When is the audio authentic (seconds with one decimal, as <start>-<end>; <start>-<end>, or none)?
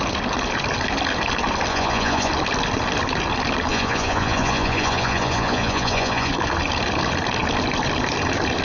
0.0-1.7; 2.3-3.7; 6.3-8.6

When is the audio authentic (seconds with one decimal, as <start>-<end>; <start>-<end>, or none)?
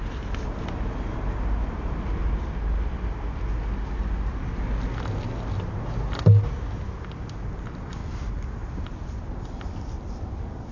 0.0-10.7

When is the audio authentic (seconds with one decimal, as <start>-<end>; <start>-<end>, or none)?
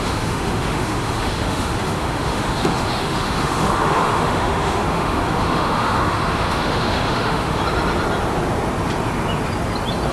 7.6-10.1